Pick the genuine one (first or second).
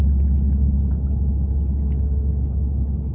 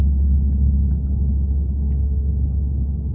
first